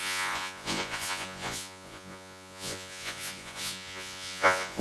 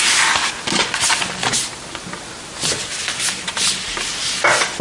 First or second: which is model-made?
first